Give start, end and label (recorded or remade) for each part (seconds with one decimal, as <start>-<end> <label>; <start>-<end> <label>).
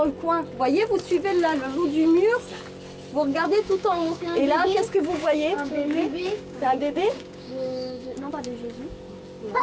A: 0.0-3.3 recorded; 3.3-8.3 remade; 8.3-9.6 recorded